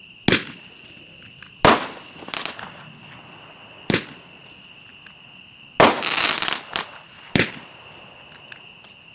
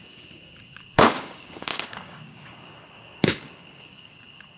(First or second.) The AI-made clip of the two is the second